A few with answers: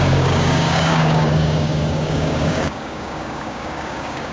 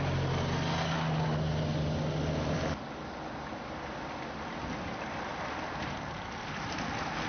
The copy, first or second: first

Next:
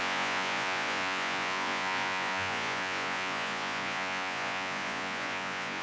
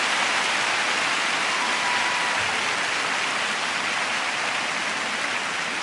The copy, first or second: first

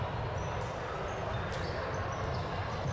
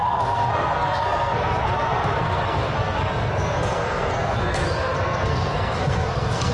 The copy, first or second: second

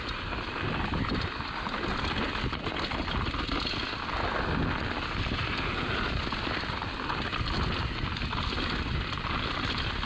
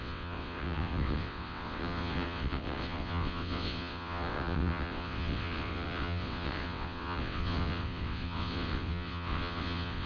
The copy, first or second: second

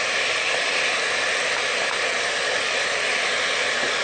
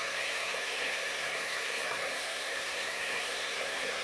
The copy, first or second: second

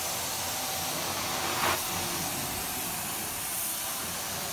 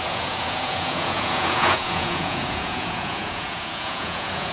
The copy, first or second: second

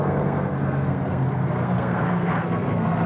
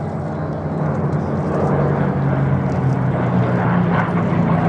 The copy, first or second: first